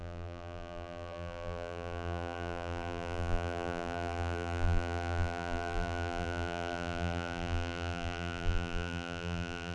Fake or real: fake